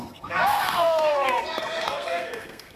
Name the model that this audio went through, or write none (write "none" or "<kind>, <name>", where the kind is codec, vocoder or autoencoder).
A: codec, SNAC